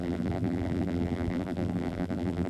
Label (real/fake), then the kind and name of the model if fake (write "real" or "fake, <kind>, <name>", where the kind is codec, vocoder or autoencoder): fake, vocoder, BigVGAN v2